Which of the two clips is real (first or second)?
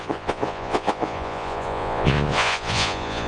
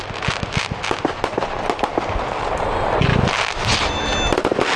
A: second